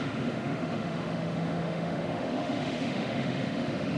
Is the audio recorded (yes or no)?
no